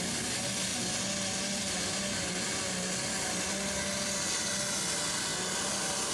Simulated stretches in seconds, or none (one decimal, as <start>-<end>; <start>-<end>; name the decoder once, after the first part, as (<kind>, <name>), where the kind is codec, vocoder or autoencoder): none